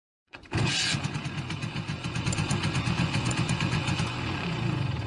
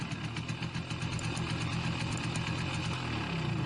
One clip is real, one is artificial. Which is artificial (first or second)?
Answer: first